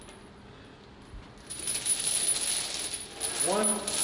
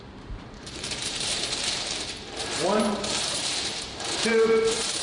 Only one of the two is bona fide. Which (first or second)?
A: first